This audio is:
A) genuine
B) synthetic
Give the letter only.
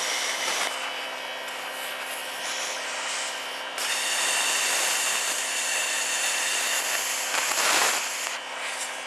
A